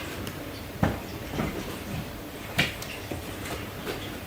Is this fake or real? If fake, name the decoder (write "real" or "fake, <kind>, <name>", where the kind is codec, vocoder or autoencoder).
fake, vocoder, BigVGAN v2